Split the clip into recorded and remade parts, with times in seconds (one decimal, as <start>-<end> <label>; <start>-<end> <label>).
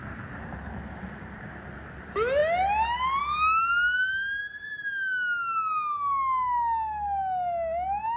0.0-8.2 recorded